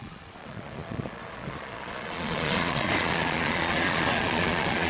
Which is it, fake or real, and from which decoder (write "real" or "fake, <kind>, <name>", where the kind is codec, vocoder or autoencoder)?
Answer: fake, vocoder, Vocos